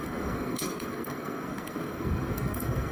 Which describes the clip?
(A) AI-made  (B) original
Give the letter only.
A